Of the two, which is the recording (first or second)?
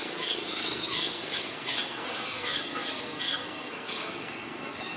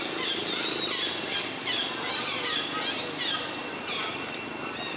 second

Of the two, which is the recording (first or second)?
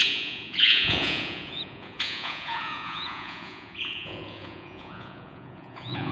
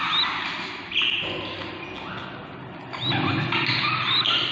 second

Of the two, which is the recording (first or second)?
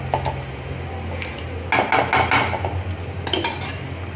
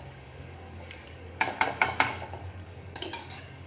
first